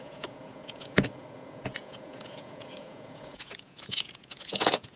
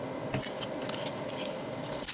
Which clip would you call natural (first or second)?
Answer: second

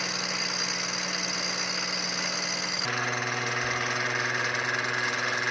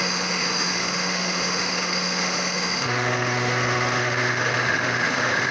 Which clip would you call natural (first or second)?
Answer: first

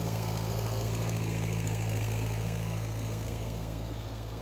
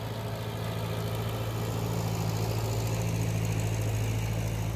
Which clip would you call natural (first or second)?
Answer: second